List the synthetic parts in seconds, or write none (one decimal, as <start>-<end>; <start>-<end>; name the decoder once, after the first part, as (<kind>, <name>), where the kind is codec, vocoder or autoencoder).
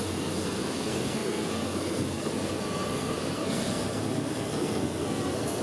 0.0-5.6 (codec, SNAC)